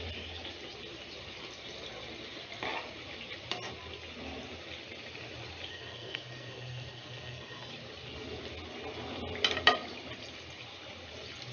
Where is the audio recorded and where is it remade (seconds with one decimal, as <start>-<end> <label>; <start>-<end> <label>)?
0.0-5.7 recorded; 5.7-7.7 remade; 7.7-11.5 recorded